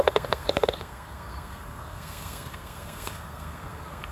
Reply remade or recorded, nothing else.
remade